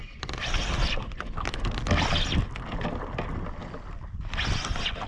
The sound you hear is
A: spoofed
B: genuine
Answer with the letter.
B